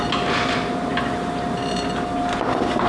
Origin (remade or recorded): recorded